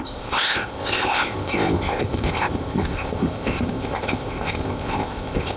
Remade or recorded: remade